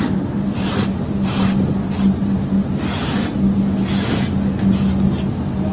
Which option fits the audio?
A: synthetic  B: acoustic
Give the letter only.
B